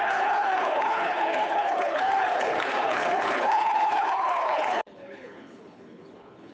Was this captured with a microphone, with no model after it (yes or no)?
no